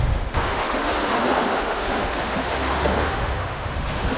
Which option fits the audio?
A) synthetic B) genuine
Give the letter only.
A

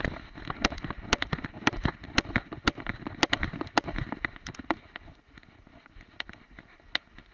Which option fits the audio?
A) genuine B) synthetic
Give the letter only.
A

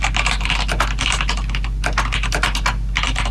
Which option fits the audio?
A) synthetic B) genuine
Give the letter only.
B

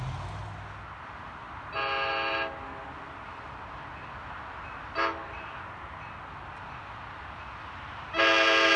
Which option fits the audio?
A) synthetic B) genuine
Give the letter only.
B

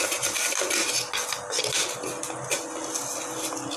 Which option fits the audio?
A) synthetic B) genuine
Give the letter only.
B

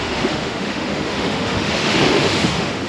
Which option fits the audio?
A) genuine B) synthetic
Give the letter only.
B